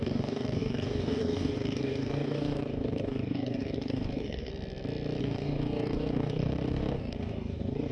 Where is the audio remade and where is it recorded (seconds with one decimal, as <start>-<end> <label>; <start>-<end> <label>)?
0.0-4.5 remade; 4.5-5.2 recorded; 5.2-7.9 remade